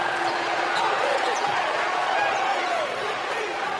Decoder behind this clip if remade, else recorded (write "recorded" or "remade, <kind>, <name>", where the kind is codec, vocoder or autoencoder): remade, vocoder, Vocos